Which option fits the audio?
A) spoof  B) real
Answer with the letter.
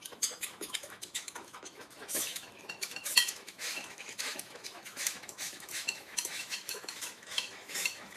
A